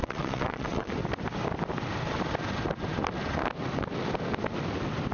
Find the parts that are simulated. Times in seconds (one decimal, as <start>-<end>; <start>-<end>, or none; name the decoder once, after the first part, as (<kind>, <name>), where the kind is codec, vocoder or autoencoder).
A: 0.0-0.9 (vocoder, WaveNeXt)